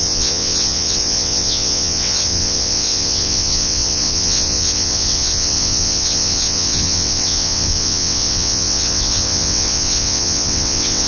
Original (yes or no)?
no